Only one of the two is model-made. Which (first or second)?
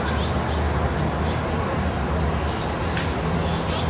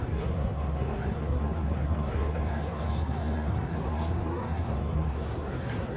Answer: second